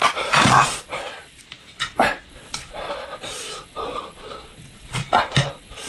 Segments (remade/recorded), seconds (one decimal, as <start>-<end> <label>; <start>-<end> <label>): 0.0-1.4 remade; 1.4-2.3 recorded; 2.3-5.0 remade; 5.0-5.5 recorded; 5.5-5.9 remade